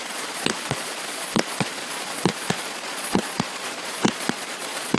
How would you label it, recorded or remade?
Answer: remade